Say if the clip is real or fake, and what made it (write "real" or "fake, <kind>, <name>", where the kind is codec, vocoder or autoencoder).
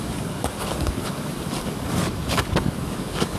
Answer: fake, codec, DAC